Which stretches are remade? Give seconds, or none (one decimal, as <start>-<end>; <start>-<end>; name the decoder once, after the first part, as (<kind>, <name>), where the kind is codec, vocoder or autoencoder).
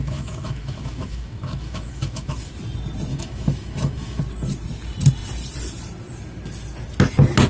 0.0-2.5 (autoencoder, DAC-VAE); 3.1-4.2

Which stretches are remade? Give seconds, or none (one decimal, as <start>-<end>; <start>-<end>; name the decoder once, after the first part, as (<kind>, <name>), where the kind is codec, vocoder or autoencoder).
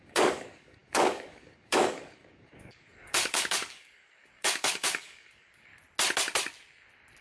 0.0-5.7 (codec, DAC)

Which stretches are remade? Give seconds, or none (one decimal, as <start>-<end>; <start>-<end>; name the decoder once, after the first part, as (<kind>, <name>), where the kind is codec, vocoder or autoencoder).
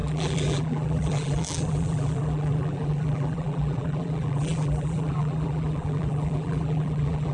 0.0-7.3 (vocoder, BigVGAN v2)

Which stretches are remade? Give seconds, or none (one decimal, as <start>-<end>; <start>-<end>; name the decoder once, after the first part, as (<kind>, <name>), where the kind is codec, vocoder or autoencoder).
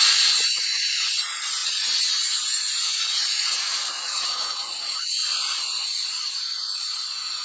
none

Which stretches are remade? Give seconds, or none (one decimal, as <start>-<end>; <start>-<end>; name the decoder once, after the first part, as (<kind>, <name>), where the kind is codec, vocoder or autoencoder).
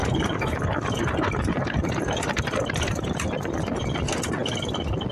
0.0-3.1 (vocoder, BigVGAN v2)